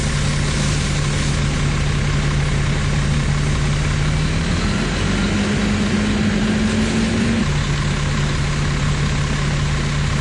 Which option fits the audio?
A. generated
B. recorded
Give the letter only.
B